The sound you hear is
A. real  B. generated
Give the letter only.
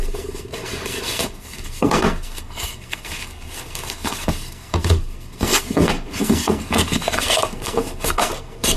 B